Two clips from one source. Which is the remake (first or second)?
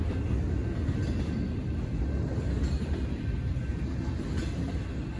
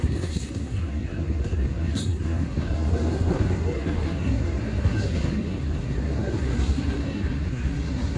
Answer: second